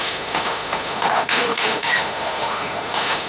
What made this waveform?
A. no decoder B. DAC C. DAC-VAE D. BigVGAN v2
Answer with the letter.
C